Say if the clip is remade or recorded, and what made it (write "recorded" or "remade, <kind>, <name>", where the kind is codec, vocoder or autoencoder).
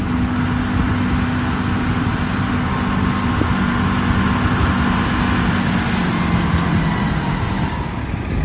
recorded